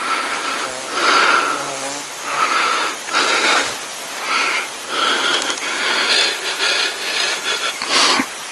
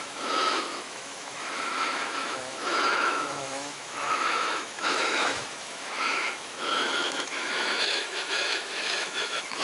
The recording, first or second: first